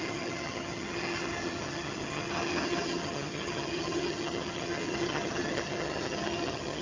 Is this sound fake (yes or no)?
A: yes